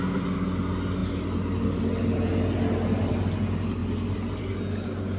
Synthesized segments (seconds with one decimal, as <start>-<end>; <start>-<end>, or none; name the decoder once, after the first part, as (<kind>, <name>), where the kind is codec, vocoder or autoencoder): none